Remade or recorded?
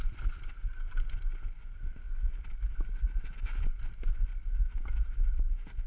recorded